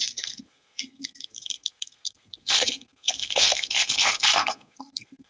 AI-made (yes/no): yes